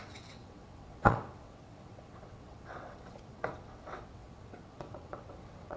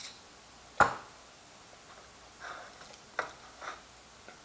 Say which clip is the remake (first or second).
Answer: first